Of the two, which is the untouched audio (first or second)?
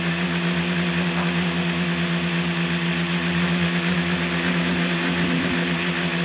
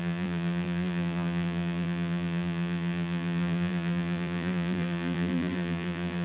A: first